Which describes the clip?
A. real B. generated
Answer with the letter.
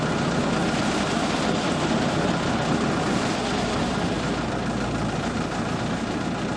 A